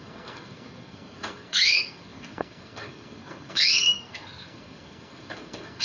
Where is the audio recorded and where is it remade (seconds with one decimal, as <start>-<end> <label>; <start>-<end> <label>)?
0.0-5.8 remade